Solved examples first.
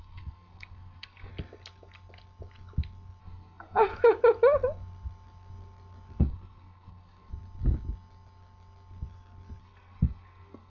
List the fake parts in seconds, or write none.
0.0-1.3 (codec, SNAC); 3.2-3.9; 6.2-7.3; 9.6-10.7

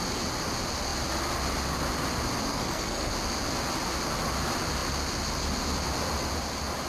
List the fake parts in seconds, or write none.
2.5-3.1 (codec, SNAC)

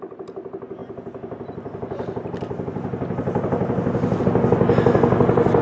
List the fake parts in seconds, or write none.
none

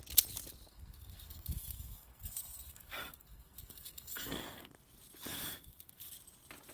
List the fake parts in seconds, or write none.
0.7-4.7 (codec, SNAC); 5.3-6.1